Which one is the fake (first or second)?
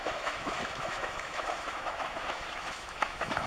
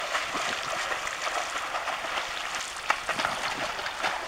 first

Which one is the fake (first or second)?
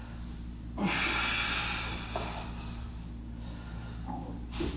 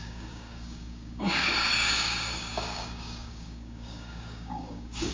second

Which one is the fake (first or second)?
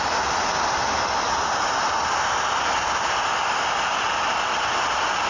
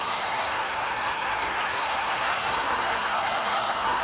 second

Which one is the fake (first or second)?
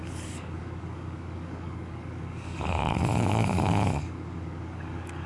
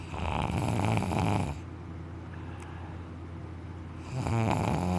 first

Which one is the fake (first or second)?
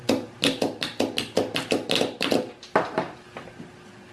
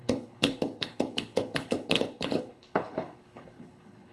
second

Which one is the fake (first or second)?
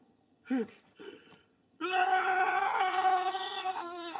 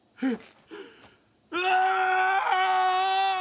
first